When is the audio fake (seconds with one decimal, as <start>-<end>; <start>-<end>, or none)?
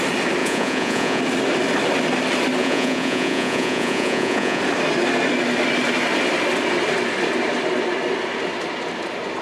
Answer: 0.4-1.2; 2.6-4.6